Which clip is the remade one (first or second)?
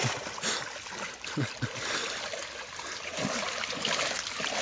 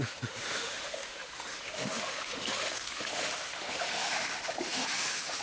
second